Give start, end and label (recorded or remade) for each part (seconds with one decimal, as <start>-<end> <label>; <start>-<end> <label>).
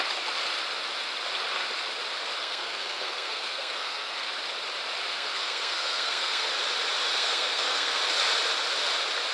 0.0-2.4 recorded; 2.4-4.3 remade; 4.3-5.1 recorded; 5.1-6.5 remade; 6.5-7.1 recorded; 7.1-8.0 remade; 8.0-9.3 recorded